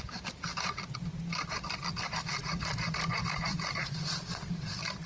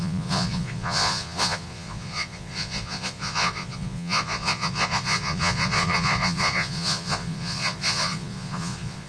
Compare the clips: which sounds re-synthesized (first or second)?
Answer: second